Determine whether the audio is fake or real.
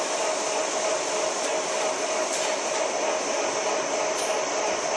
real